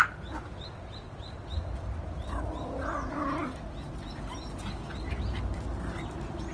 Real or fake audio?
real